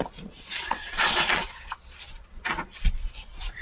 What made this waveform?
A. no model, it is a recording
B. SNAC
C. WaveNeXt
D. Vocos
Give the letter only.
D